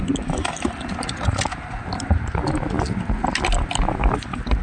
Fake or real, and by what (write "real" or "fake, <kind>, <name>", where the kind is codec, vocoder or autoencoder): real